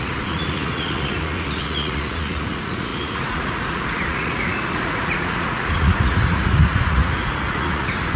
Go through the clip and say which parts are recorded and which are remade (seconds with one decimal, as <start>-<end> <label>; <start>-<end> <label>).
0.0-8.2 remade